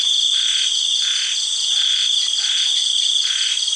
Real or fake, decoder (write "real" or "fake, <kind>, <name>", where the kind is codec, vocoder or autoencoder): real